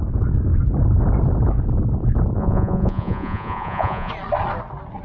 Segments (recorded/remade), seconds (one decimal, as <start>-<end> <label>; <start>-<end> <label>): 0.0-2.4 recorded; 2.4-4.1 remade; 4.1-5.0 recorded

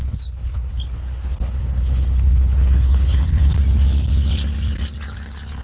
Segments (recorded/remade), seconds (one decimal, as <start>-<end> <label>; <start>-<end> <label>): 0.0-3.5 remade; 3.5-5.6 recorded